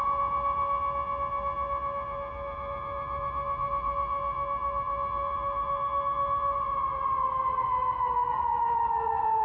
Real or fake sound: fake